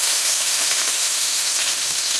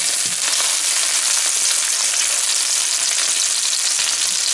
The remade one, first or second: first